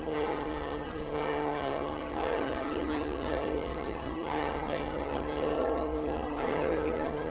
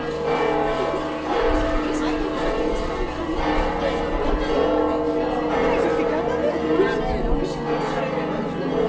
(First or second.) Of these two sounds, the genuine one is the second